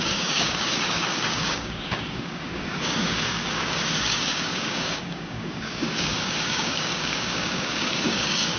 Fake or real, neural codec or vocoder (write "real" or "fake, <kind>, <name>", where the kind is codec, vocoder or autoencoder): fake, codec, DAC